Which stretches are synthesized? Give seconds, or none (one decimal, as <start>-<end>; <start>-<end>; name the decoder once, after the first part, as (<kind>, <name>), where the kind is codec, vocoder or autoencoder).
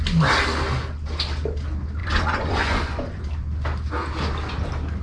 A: 2.0-3.2 (vocoder, Vocos)